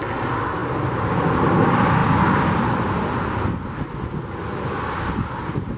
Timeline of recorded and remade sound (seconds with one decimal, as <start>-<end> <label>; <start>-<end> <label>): 0.0-5.8 recorded